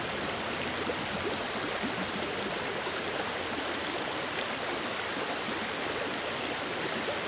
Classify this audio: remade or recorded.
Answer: recorded